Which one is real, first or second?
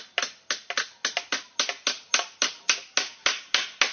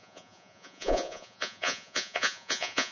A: first